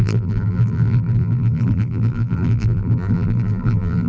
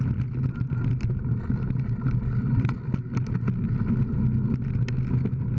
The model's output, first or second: first